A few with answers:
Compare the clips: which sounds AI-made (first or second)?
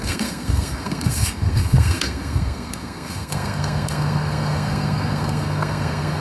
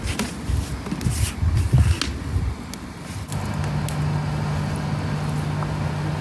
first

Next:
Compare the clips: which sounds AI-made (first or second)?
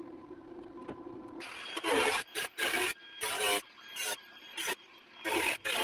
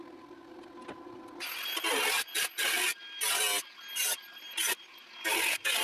first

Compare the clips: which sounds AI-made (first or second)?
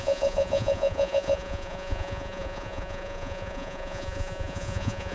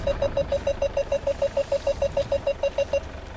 first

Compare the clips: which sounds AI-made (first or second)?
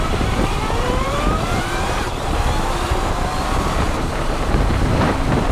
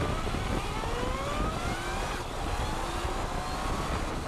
first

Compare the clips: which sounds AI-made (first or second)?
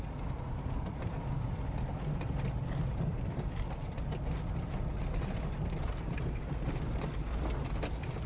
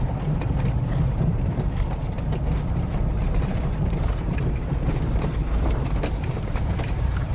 second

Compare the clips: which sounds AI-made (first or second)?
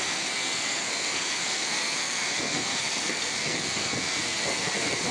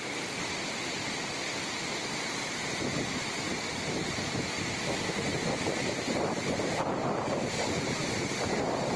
first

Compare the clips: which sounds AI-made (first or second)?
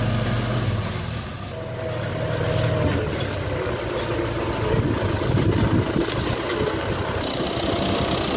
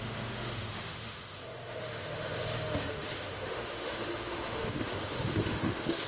second